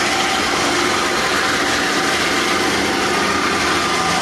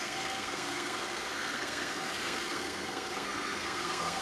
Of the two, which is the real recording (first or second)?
first